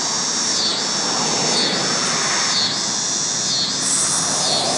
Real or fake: real